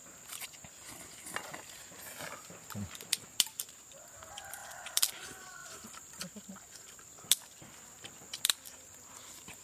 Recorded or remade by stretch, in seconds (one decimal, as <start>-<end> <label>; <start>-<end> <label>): 0.0-4.6 recorded; 4.6-5.1 remade; 5.1-5.6 recorded; 5.6-6.2 remade; 6.2-9.6 recorded